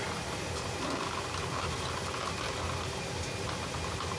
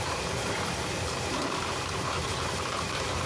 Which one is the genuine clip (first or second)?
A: first